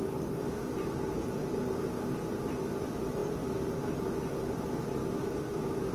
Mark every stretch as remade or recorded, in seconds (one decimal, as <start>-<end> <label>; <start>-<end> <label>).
0.0-5.0 recorded; 5.0-5.9 remade